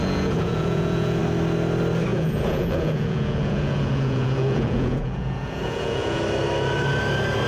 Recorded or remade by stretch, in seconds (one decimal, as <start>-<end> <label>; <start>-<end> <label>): 0.0-1.2 remade; 1.2-2.1 recorded; 2.1-6.2 remade; 6.2-7.5 recorded